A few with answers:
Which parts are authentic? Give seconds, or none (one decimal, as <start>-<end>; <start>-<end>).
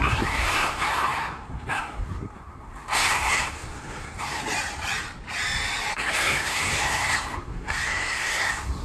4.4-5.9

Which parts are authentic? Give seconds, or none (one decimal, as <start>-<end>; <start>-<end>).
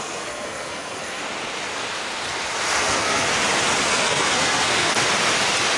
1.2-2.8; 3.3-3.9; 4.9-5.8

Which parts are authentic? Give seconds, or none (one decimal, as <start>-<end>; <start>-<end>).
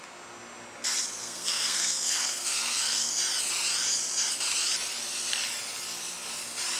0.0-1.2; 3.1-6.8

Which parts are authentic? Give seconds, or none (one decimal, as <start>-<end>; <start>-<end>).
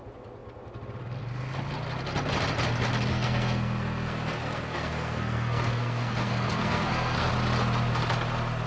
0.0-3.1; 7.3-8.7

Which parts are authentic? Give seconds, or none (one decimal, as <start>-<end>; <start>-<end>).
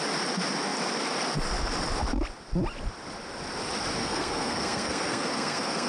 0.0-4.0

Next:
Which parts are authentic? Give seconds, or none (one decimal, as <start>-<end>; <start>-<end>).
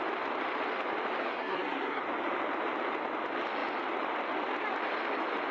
0.0-1.2; 2.0-5.5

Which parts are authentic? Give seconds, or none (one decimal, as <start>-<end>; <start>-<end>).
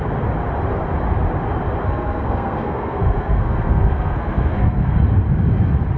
0.0-1.8; 4.9-6.0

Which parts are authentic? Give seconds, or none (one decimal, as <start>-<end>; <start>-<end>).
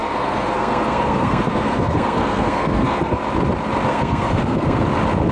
3.2-3.9; 4.8-5.3